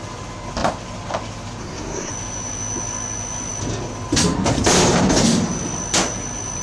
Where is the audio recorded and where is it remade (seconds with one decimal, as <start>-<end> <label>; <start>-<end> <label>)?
0.0-1.6 recorded; 1.6-2.1 remade; 2.1-6.6 recorded